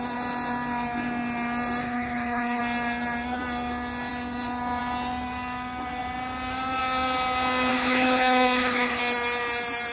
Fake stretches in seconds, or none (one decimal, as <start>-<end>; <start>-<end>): 1.8-2.6; 7.7-9.0